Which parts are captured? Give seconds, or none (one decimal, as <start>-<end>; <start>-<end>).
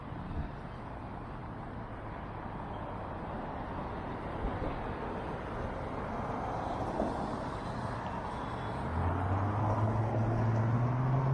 0.0-1.4; 2.4-11.3